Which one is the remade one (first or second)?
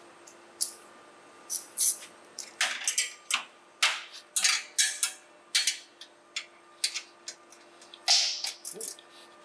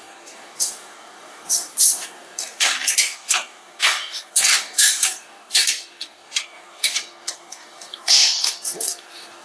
second